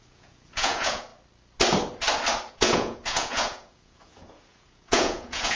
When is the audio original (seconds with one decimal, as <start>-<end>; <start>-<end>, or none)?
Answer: 1.1-2.5